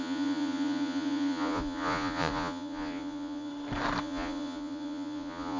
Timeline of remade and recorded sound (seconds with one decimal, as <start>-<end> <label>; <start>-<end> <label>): 0.0-3.5 remade; 3.5-4.0 recorded; 4.0-5.6 remade